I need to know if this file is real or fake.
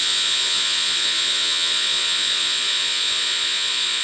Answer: fake